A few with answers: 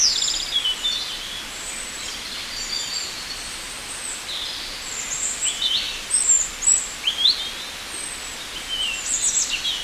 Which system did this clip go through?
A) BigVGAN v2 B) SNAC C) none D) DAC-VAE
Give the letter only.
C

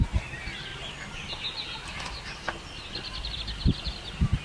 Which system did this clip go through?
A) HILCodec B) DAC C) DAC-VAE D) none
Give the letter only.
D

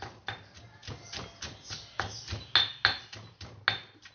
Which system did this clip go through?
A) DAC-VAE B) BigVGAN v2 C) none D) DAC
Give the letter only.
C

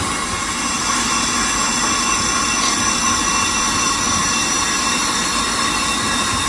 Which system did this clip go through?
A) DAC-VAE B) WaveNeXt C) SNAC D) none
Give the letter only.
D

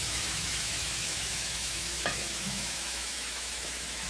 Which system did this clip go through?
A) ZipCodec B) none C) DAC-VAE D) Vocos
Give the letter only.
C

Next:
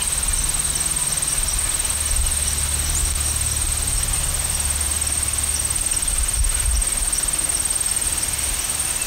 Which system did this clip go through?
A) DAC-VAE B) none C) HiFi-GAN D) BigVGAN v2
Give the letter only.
B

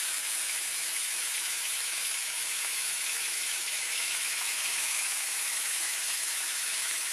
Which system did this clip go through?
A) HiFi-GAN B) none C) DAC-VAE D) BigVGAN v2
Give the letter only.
C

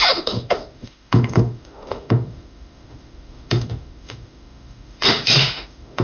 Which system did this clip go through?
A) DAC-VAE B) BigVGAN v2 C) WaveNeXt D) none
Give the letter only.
A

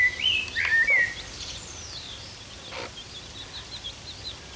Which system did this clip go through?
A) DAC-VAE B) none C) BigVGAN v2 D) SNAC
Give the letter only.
B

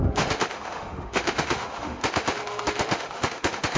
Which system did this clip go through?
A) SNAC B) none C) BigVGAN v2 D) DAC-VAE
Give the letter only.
D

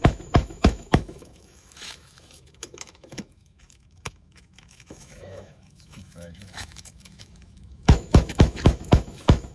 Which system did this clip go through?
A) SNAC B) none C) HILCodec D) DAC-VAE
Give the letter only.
D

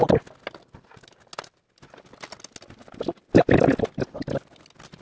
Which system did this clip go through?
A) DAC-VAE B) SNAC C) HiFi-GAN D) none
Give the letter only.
D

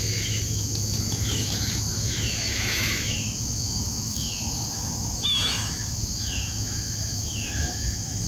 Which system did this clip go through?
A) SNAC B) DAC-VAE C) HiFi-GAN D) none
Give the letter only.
B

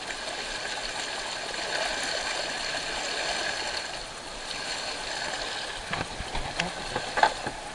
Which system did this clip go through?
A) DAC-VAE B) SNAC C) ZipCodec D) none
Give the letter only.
D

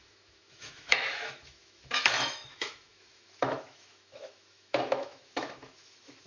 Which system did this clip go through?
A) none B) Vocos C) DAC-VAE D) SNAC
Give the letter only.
C